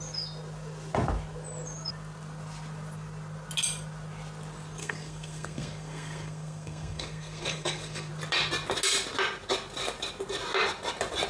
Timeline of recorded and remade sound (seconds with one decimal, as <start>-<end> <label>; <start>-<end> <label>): 0.0-4.8 recorded; 4.8-8.1 remade; 8.1-11.3 recorded